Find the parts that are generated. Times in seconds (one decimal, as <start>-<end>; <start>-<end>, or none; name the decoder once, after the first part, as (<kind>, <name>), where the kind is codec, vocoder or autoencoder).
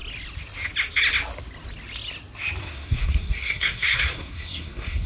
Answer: 2.6-5.1 (codec, SNAC)